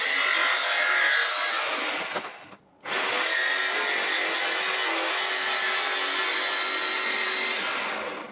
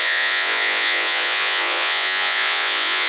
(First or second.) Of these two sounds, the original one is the first